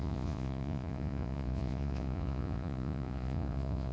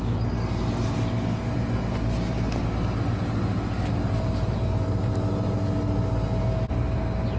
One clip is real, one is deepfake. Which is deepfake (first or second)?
first